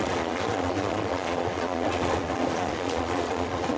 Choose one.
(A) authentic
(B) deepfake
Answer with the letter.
B